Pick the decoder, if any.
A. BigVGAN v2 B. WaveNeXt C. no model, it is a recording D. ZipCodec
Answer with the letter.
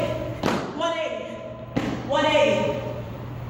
A